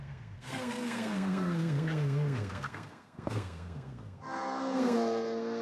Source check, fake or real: fake